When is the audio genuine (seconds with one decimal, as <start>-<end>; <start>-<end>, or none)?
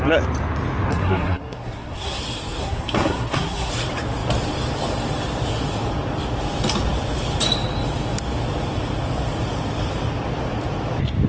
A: 0.0-0.9; 2.2-2.6; 3.7-11.3